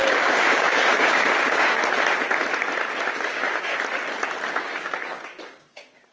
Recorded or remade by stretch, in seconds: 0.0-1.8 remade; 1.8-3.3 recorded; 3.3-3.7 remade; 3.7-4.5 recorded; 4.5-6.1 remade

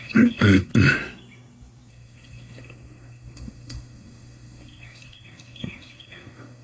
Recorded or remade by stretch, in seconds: 0.0-0.7 remade; 0.7-1.9 recorded; 1.9-6.6 remade

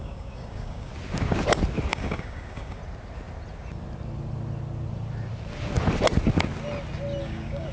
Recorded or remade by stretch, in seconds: 0.0-0.9 remade; 0.9-1.9 recorded; 1.9-2.8 remade; 2.8-7.2 recorded; 7.2-7.7 remade

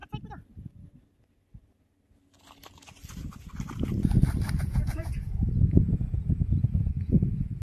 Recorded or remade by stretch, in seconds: 0.0-4.6 recorded; 4.6-7.6 remade